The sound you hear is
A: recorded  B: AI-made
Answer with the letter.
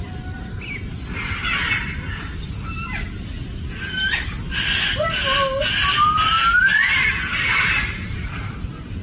A